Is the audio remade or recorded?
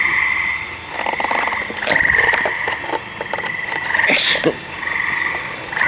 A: recorded